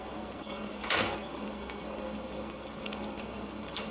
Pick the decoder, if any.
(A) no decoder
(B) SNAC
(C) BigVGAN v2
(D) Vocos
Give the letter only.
B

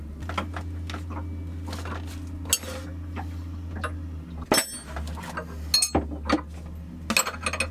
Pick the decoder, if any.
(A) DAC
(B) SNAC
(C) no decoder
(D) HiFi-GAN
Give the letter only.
C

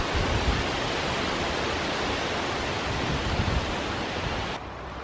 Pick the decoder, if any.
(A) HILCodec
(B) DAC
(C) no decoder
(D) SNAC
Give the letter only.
C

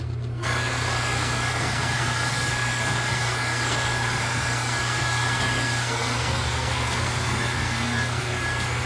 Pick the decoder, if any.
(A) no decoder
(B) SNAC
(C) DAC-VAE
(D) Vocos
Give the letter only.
B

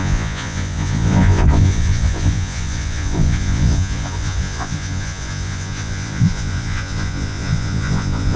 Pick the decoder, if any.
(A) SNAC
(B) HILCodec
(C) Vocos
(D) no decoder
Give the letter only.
C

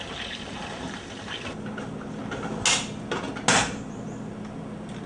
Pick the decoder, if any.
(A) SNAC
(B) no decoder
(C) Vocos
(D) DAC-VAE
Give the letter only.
B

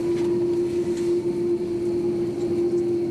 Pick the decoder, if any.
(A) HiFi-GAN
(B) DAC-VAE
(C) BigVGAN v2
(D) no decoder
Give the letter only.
D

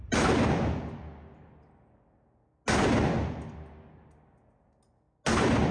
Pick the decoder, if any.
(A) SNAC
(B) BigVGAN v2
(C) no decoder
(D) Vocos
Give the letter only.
C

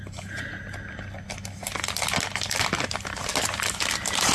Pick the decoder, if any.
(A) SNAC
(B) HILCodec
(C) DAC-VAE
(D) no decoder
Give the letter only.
D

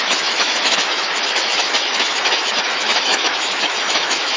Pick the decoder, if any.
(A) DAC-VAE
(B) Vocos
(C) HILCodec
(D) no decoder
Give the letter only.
A